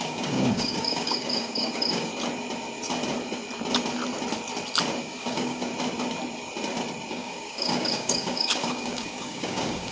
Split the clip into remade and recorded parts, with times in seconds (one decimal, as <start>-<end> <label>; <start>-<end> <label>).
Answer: 0.0-2.1 remade; 2.1-5.0 recorded; 5.0-5.7 remade; 5.7-7.1 recorded; 7.1-9.9 remade